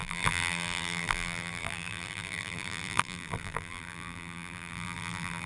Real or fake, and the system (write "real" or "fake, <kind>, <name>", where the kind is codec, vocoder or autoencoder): fake, vocoder, BigVGAN v2